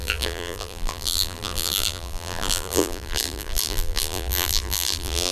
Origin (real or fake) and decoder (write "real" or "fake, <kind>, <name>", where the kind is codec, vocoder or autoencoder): fake, vocoder, BigVGAN v2